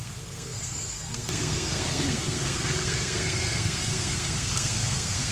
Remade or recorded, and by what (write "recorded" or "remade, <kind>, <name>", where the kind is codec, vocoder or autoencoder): remade, codec, SNAC